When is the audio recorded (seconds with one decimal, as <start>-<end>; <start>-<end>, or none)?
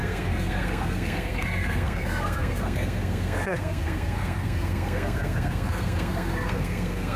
none